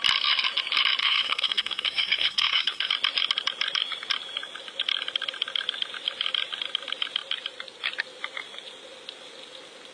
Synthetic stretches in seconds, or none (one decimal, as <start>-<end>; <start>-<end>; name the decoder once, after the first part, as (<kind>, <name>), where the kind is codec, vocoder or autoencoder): 1.0-2.9 (codec, SNAC)